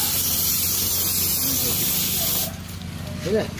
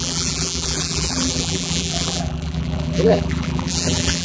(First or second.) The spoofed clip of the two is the second